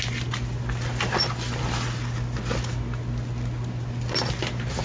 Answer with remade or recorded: recorded